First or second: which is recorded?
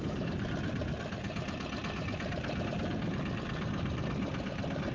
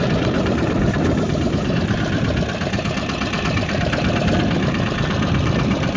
first